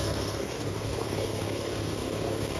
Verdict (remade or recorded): remade